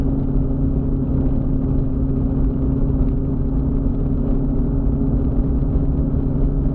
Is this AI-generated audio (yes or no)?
no